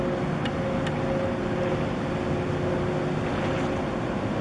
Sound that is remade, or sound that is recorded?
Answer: recorded